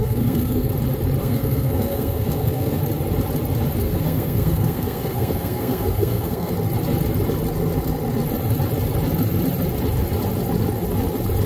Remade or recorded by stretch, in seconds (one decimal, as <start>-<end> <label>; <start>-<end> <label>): 0.0-0.7 remade; 0.7-1.2 recorded; 1.2-2.8 remade; 2.8-3.8 recorded; 3.8-6.5 remade; 6.5-11.5 recorded